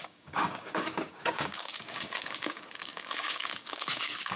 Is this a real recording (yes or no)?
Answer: no